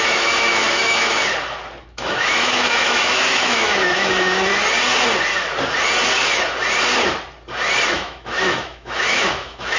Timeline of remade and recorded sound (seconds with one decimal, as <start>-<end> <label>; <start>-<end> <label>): 0.0-1.2 remade; 1.2-1.8 recorded; 1.8-4.5 remade; 4.5-7.9 recorded; 7.9-9.8 remade